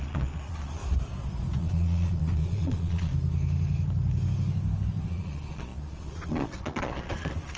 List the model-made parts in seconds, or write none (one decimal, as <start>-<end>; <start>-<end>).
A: 0.0-0.8; 1.6-3.1; 5.1-7.6